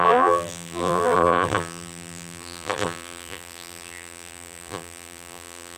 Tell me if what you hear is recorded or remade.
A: remade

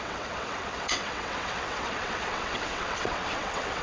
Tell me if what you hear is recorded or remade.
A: remade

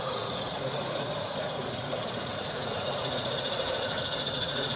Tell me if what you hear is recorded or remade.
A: remade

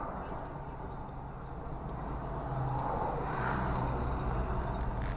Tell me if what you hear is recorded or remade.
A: recorded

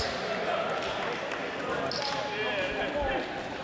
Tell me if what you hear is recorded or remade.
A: recorded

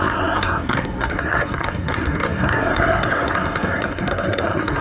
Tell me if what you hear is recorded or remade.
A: remade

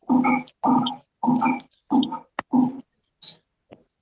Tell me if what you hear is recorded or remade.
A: recorded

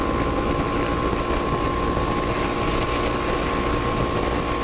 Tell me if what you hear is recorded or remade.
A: recorded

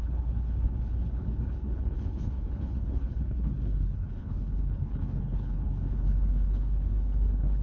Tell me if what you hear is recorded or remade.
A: remade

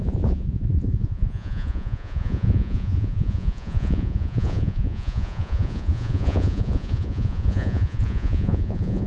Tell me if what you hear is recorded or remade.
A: remade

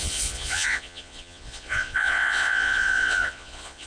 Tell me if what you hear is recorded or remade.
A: remade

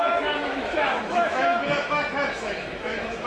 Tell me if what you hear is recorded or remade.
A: remade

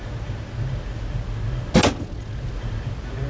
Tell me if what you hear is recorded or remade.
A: recorded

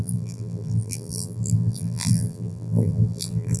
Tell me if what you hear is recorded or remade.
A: remade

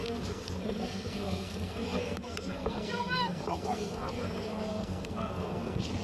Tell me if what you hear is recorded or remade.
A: remade